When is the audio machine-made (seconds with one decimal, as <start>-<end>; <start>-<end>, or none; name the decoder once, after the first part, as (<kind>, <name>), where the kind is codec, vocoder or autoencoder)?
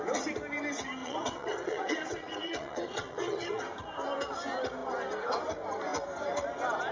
1.0-3.6 (vocoder, WaveNeXt)